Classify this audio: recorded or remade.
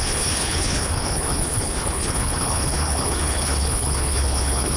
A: remade